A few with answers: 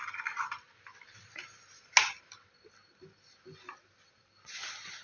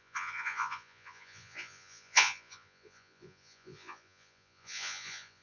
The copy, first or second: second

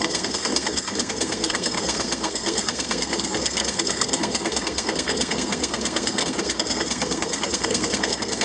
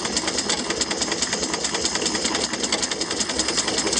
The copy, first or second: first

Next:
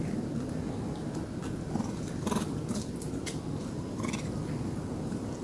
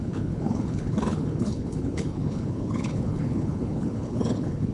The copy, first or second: second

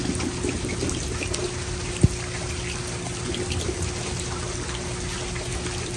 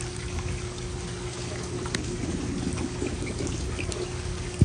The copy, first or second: second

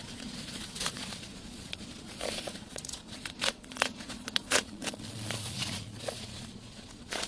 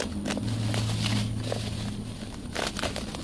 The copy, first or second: first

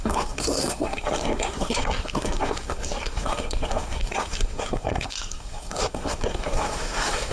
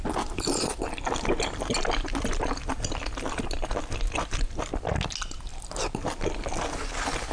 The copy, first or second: first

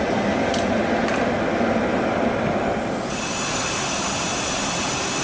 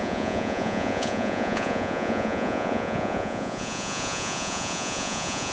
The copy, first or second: second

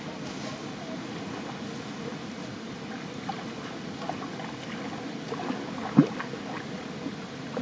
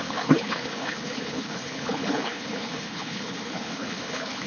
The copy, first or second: second